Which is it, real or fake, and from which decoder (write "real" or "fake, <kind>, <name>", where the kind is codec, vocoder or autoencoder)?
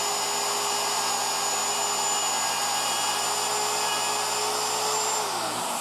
real